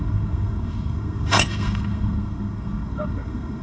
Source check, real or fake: fake